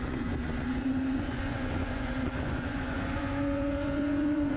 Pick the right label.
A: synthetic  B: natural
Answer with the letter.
A